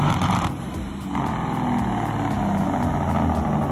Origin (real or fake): real